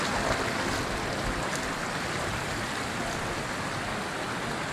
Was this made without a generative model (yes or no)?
yes